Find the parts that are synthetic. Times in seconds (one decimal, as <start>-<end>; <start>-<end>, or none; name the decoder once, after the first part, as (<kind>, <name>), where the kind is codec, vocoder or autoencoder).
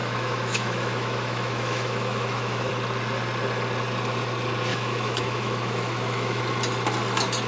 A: 0.0-2.7 (autoencoder, DAC-VAE); 4.7-6.4